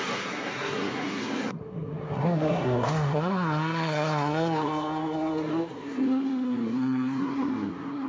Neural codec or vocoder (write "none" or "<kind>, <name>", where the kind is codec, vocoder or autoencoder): codec, SNAC